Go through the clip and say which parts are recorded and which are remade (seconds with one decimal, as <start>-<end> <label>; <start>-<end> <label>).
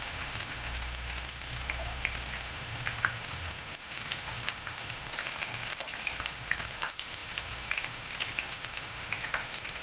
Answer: 0.0-9.8 remade